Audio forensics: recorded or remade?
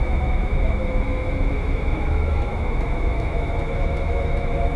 remade